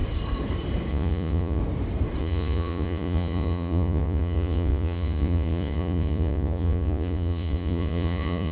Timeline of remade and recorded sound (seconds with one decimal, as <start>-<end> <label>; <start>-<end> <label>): 0.0-0.9 recorded; 0.9-1.6 remade; 1.6-2.2 recorded; 2.2-8.5 remade